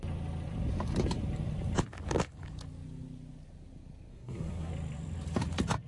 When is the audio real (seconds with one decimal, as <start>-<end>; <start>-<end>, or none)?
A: 0.0-4.1; 4.7-5.9